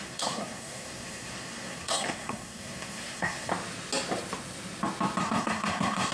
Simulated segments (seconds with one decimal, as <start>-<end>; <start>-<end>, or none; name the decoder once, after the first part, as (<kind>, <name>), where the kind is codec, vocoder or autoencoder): 0.0-3.5 (codec, SNAC); 5.2-6.1